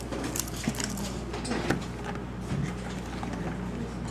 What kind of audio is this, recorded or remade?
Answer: recorded